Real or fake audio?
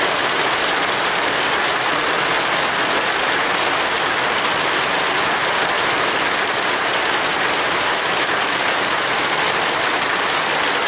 real